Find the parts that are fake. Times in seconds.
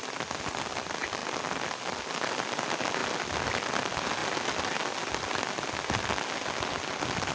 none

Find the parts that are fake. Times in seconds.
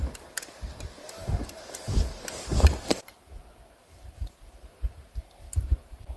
0.0-6.2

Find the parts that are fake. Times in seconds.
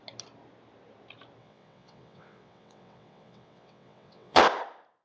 1.4-4.4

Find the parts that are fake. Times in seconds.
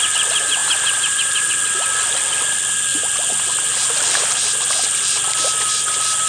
0.6-1.5